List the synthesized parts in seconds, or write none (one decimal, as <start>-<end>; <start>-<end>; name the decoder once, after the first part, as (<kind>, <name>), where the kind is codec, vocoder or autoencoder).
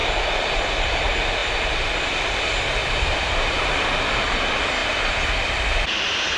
2.8-3.5 (vocoder, BigVGAN v2)